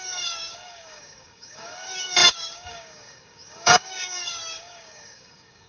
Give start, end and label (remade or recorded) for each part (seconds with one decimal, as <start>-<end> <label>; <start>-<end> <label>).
0.0-5.7 remade